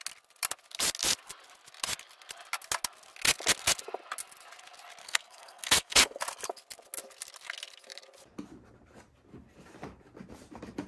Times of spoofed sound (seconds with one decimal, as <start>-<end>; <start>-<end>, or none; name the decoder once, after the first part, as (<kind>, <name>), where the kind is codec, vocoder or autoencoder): 5.0-6.2 (codec, SNAC)